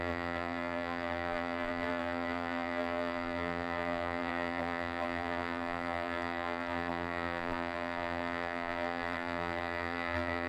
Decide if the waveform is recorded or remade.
remade